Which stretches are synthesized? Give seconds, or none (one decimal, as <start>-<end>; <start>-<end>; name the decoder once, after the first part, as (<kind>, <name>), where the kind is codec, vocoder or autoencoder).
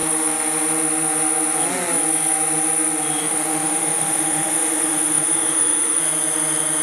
3.2-6.0 (autoencoder, DAC-VAE)